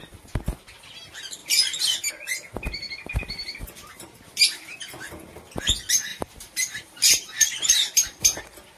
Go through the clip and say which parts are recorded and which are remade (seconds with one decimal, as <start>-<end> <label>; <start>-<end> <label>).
0.0-1.4 recorded; 1.4-2.1 remade; 2.1-3.2 recorded; 3.2-4.8 remade; 4.8-6.1 recorded; 6.1-8.4 remade; 8.4-8.8 recorded

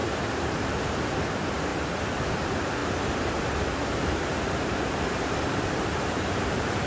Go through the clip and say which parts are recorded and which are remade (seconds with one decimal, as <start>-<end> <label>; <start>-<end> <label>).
0.0-0.8 remade; 0.8-1.7 recorded; 1.7-2.2 remade; 2.2-2.8 recorded; 2.8-6.9 remade